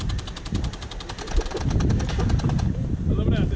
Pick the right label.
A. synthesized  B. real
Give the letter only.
B